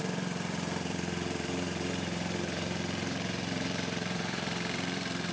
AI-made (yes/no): yes